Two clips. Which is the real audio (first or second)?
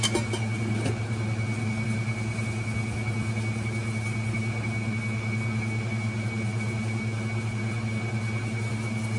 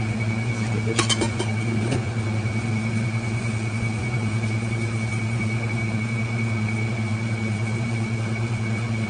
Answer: first